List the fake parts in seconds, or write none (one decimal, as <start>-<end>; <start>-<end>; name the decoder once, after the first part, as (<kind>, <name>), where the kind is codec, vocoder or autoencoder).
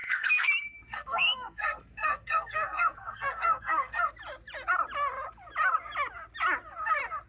0.0-0.5 (codec, SNAC); 0.9-4.1